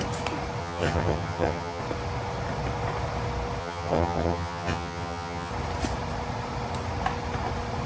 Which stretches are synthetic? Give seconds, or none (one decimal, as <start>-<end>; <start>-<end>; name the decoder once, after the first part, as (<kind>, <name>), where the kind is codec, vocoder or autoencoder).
0.6-1.8 (vocoder, HiFi-GAN); 3.6-5.5